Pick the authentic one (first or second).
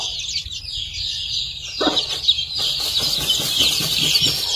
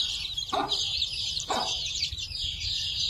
first